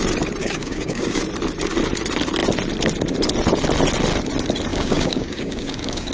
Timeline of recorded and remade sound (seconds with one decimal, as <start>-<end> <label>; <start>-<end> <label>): 0.0-0.4 recorded; 0.4-1.2 remade; 1.2-4.7 recorded; 4.7-6.1 remade

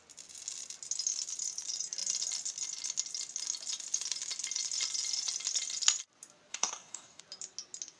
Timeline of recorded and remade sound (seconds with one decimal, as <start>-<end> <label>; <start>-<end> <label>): 0.0-6.5 recorded; 6.5-7.2 remade; 7.2-8.0 recorded

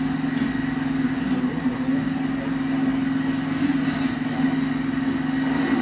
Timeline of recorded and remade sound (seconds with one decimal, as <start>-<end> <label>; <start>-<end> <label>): 0.0-5.8 recorded

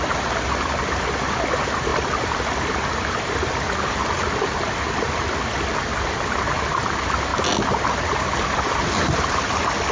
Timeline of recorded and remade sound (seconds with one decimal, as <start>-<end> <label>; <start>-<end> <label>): 0.0-9.9 recorded

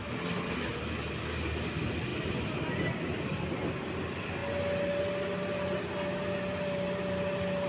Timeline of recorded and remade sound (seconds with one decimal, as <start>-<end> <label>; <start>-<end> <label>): 0.0-7.7 recorded